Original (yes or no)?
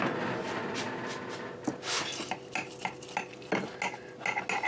yes